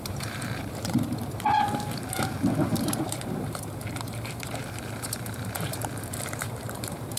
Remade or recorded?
remade